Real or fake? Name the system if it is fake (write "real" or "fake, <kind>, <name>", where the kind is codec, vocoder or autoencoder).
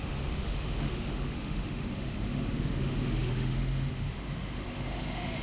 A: fake, autoencoder, DAC-VAE